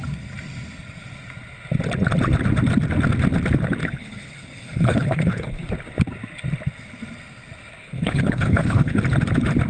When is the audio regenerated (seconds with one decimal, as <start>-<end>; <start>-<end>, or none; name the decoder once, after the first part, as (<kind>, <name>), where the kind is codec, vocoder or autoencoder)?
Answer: 3.8-5.7 (codec, HILCodec); 7.8-9.0